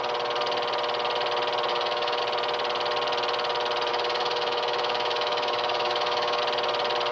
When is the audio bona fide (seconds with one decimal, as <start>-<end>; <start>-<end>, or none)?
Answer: 0.0-1.7; 2.2-3.9; 6.4-7.1